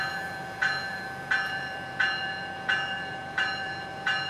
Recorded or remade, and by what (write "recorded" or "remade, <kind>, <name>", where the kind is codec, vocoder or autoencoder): remade, vocoder, Vocos